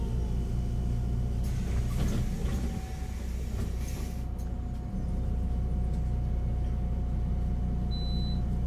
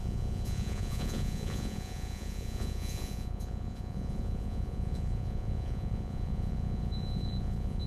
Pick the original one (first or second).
first